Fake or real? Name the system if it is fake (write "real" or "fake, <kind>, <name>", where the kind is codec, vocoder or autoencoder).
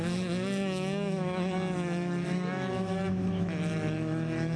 fake, autoencoder, DAC-VAE